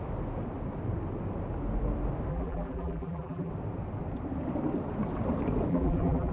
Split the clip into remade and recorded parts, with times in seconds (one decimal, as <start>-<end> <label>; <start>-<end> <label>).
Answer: 0.0-2.3 recorded; 2.3-3.5 remade; 3.5-5.7 recorded; 5.7-6.3 remade